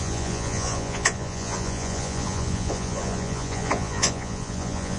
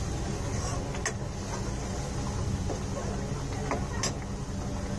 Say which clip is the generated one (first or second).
first